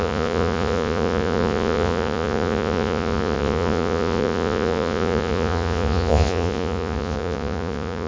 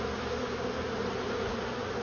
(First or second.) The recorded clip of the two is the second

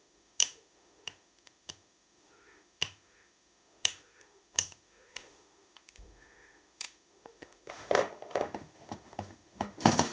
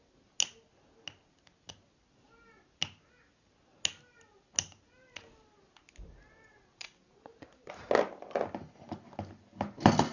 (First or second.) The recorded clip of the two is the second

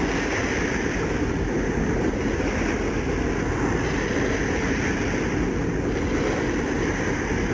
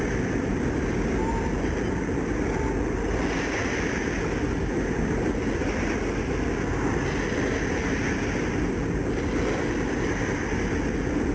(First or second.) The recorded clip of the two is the second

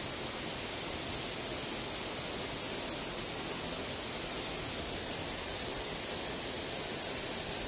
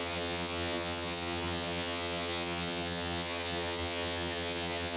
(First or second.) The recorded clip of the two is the first